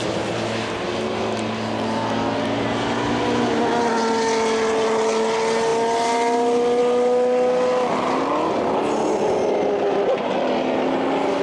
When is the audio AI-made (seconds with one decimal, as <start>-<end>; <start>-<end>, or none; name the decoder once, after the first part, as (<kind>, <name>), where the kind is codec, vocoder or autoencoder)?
none